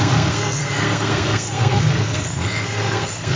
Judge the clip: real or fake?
fake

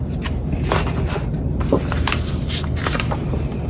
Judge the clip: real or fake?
real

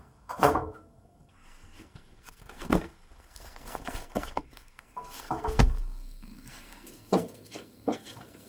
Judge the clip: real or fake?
fake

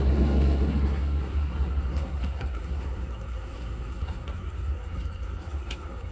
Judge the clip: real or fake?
fake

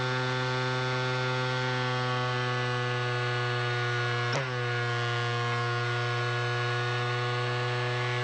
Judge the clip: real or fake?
real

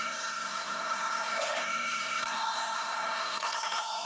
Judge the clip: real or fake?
fake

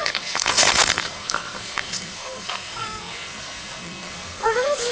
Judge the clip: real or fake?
fake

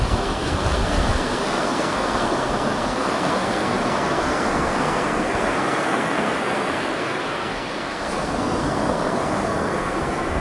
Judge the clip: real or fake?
fake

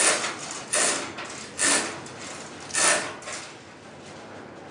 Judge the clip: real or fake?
real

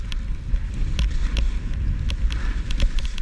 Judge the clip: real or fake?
real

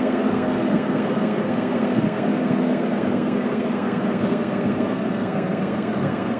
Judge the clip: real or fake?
fake